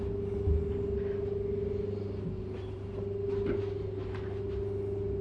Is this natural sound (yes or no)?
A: yes